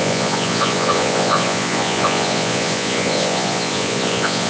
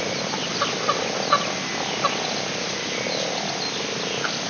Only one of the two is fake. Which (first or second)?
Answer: first